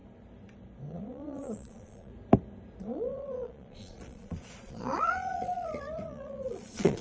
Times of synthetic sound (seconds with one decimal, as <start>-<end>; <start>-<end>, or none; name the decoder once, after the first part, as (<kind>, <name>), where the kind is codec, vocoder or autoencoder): 0.9-2.1 (vocoder, Vocos); 2.8-7.0